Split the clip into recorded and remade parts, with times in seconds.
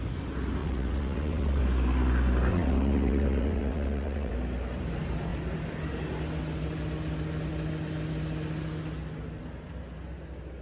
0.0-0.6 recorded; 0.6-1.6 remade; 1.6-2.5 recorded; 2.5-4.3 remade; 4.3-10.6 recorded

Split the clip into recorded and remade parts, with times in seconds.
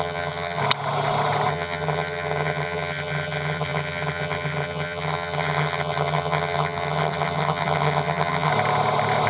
0.0-0.6 remade; 0.6-1.5 recorded; 1.5-8.5 remade; 8.5-9.3 recorded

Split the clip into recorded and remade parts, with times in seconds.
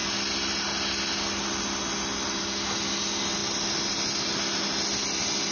0.0-5.5 recorded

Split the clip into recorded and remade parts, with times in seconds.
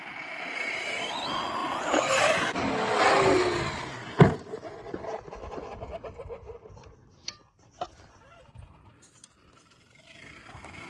0.0-10.9 recorded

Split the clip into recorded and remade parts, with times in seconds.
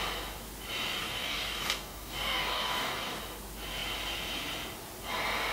0.0-1.0 recorded; 1.0-3.2 remade; 3.2-5.5 recorded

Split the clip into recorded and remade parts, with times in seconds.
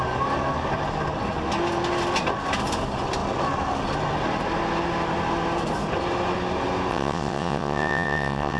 0.0-6.9 recorded; 6.9-8.6 remade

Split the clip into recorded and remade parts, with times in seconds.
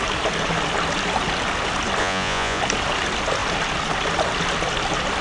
0.0-2.0 recorded; 2.0-2.6 remade; 2.6-5.2 recorded